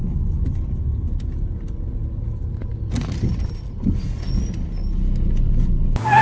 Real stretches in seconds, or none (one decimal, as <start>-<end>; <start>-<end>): 0.0-6.2